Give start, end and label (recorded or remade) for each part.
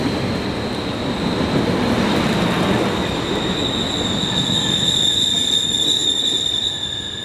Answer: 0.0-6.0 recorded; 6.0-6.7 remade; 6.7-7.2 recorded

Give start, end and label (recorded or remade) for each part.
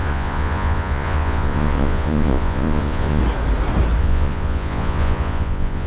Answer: 0.0-3.2 remade; 3.2-4.0 recorded; 4.0-5.9 remade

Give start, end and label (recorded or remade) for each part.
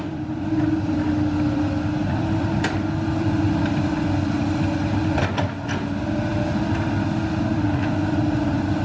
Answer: 0.0-4.8 remade; 4.8-7.8 recorded; 7.8-8.8 remade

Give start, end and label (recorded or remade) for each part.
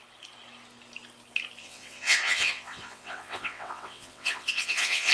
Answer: 0.0-1.6 recorded; 1.6-5.1 remade